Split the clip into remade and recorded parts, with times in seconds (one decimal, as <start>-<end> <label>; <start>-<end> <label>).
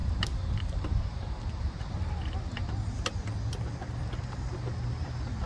0.0-1.4 remade; 1.4-5.5 recorded